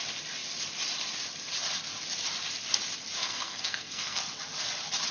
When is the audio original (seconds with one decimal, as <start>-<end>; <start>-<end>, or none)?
0.0-3.2; 4.2-5.1

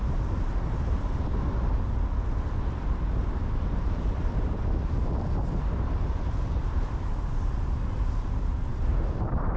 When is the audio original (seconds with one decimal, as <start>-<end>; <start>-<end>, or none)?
0.0-9.6

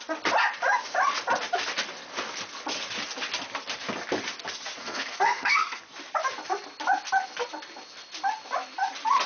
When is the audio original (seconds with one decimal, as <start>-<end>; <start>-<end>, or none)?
0.0-4.8; 5.8-9.3

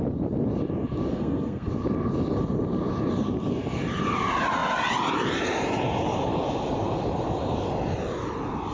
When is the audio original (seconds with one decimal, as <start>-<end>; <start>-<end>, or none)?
0.0-1.1; 1.7-8.7

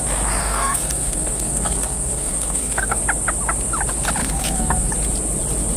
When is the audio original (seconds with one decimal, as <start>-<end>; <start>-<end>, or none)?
0.0-0.4; 3.0-4.2; 4.9-5.8